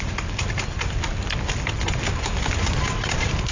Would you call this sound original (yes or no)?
yes